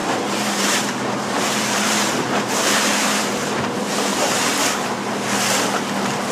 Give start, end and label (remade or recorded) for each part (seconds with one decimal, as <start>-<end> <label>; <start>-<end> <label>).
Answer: 0.0-3.6 remade; 3.6-4.1 recorded; 4.1-5.1 remade; 5.1-6.3 recorded